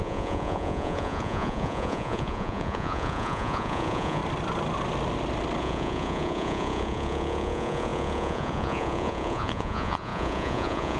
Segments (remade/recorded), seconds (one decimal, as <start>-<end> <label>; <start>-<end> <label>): 0.0-4.2 remade; 4.2-5.6 recorded; 5.6-11.0 remade